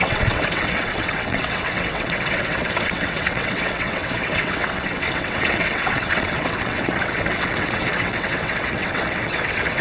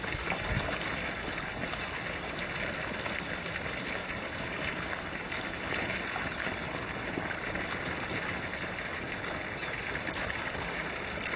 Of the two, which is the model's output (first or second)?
first